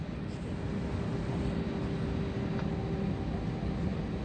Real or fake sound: real